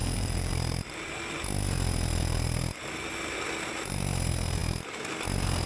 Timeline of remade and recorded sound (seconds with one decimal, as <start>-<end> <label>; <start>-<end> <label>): 0.0-0.5 remade; 0.5-5.7 recorded